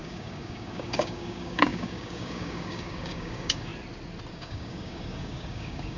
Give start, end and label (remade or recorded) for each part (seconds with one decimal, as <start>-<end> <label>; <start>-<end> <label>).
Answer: 0.0-3.7 remade; 3.7-4.3 recorded; 4.3-6.0 remade